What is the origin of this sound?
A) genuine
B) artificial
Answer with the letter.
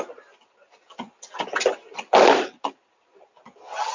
A